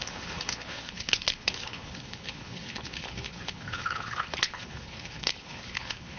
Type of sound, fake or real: fake